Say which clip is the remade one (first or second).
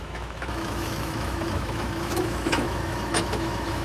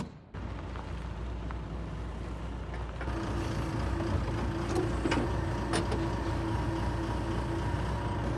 first